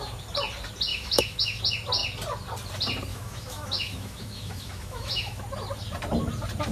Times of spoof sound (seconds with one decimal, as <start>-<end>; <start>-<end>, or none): 0.9-1.6; 3.1-5.4